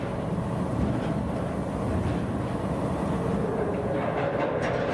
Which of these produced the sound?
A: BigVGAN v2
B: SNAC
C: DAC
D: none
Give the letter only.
D